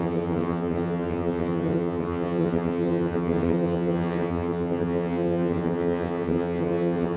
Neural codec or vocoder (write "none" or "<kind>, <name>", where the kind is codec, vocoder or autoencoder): vocoder, HiFi-GAN